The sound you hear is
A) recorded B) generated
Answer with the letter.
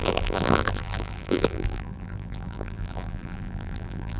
B